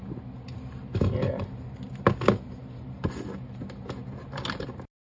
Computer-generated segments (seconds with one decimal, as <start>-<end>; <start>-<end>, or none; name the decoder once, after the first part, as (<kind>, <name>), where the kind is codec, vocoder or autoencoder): none